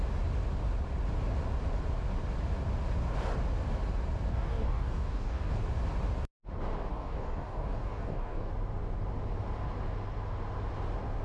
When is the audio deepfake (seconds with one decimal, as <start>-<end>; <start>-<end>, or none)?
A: 4.3-5.5; 6.9-8.5